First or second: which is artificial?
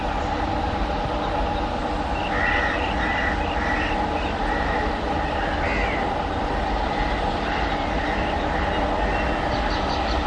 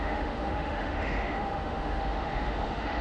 second